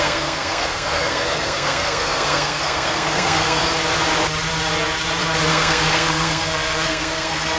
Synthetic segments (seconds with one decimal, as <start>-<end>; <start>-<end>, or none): 0.0-3.6; 5.5-7.6